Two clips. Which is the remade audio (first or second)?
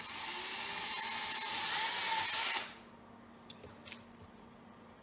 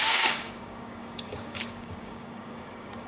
second